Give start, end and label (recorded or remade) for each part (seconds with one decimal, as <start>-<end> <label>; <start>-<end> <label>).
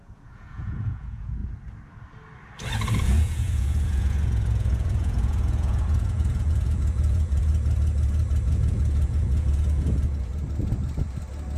0.0-1.4 remade; 1.4-3.0 recorded; 3.0-7.5 remade; 7.5-8.5 recorded; 8.5-10.3 remade; 10.3-11.6 recorded